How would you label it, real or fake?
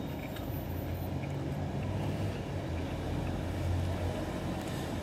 real